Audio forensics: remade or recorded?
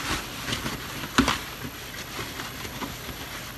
recorded